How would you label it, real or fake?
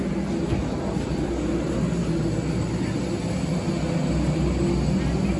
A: real